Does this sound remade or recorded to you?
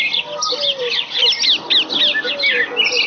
recorded